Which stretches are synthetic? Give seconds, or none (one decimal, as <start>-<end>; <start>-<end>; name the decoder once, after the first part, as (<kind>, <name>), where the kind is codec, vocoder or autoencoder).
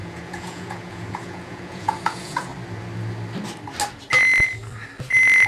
0.0-2.5 (vocoder, Vocos)